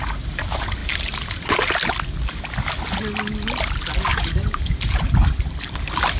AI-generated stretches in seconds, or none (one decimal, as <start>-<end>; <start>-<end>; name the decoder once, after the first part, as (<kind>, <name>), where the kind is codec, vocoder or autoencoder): 4.1-5.3 (vocoder, BigVGAN v2)